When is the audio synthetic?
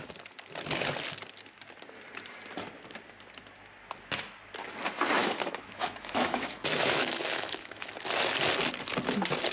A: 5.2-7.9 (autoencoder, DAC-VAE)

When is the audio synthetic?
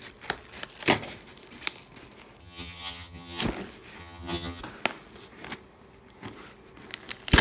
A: 2.4-3.4 (vocoder, HiFi-GAN); 4.0-4.6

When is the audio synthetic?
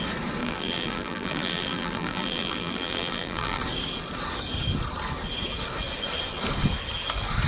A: 0.4-3.6 (vocoder, BigVGAN v2)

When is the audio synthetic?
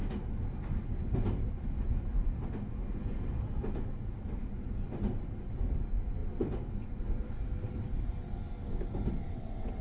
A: 9.2-9.8 (vocoder, WaveNeXt)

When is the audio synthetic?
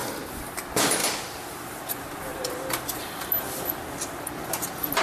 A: none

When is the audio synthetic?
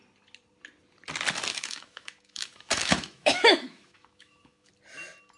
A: 1.5-4.7 (autoencoder, DAC-VAE)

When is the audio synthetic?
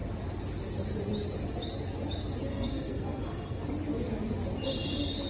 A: 2.5-3.6 (codec, SNAC)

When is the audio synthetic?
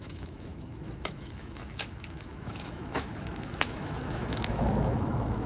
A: 0.0-5.5 (autoencoder, DAC-VAE)